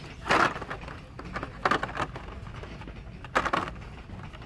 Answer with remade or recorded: recorded